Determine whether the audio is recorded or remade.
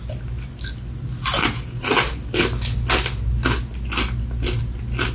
recorded